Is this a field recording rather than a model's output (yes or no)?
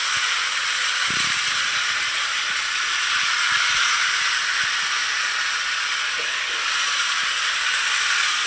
yes